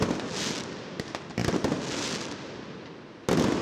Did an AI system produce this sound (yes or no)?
no